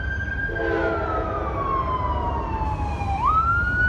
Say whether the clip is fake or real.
real